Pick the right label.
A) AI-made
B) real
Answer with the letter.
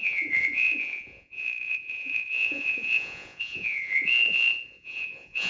A